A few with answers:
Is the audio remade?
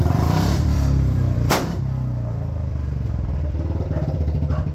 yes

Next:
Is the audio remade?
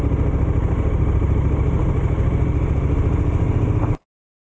no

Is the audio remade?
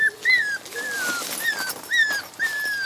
no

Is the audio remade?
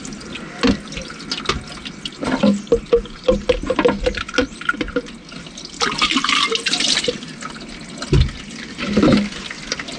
no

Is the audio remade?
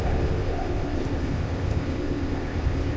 yes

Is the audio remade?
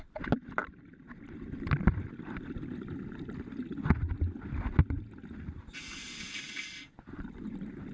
no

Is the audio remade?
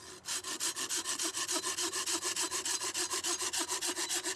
no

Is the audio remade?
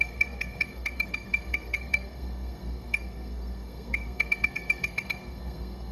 yes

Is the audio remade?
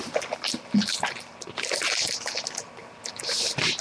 no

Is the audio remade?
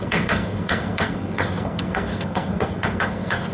yes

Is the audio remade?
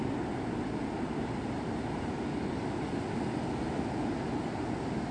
no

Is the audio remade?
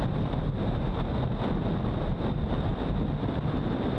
no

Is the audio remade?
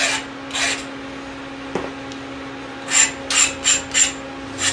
no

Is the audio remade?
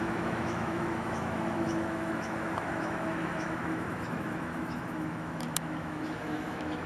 yes